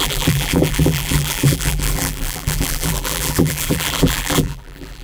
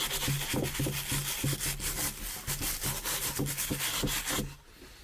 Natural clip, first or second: second